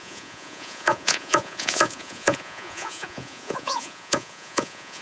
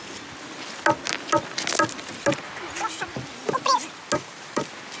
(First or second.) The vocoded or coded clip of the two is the first